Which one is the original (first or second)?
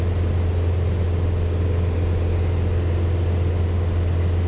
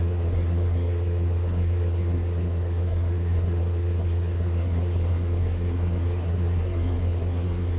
first